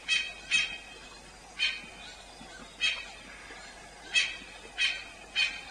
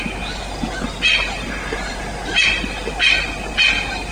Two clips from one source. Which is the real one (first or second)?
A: first